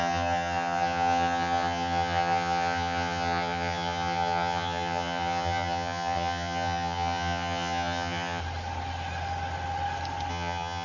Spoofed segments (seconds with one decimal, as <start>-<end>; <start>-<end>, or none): 0.0-8.4; 10.3-10.8